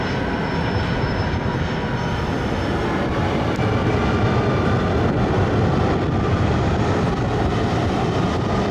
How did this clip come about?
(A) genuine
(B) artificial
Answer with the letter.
B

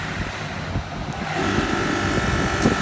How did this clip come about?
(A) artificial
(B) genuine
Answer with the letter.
B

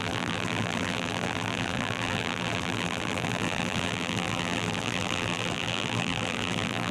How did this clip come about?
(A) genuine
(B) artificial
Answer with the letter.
B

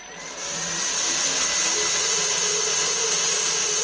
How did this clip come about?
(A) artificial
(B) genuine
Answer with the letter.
B